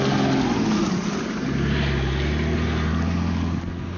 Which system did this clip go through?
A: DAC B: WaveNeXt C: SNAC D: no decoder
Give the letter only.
D